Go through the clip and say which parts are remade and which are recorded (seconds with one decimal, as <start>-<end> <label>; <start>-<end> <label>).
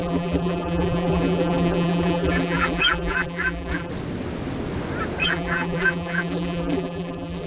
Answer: 0.0-3.9 remade; 3.9-5.2 recorded; 5.2-7.5 remade